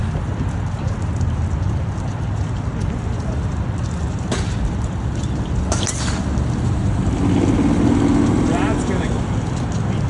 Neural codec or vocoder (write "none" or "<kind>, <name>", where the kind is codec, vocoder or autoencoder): none